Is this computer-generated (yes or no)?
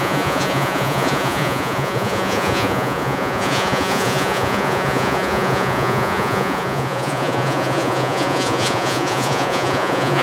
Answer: yes